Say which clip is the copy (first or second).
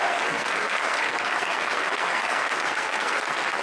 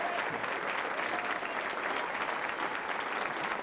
first